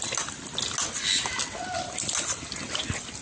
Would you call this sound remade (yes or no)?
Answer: no